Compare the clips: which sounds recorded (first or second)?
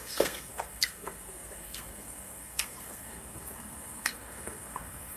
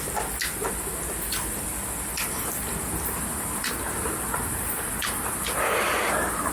second